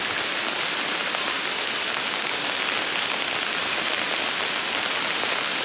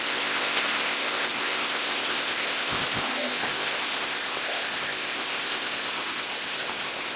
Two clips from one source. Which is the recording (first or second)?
first